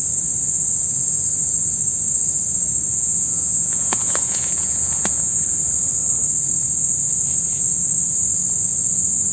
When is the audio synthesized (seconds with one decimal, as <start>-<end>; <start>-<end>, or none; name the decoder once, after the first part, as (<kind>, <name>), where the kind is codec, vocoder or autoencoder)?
2.9-5.4 (vocoder, Vocos)